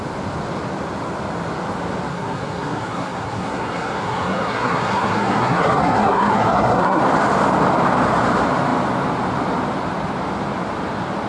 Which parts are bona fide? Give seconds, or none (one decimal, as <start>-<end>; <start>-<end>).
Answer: 0.0-2.1; 7.0-11.3